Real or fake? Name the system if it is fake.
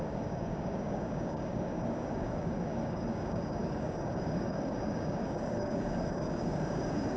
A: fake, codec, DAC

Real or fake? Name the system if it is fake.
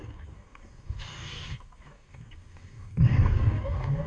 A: fake, codec, DAC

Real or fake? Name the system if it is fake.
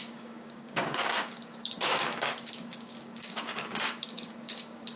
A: fake, codec, DAC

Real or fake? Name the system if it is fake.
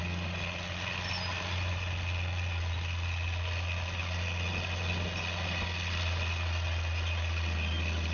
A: real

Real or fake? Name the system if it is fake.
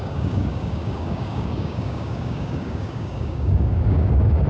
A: fake, codec, DAC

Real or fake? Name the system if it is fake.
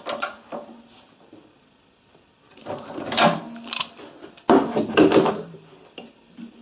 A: real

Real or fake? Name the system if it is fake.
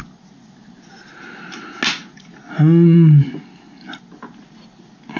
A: real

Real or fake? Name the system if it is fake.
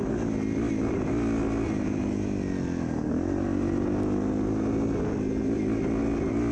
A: real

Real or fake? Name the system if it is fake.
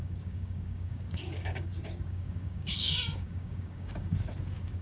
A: fake, codec, DAC